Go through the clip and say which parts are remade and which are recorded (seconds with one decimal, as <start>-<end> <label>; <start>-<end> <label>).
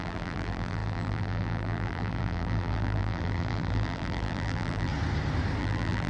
0.0-4.9 remade; 4.9-5.6 recorded; 5.6-6.1 remade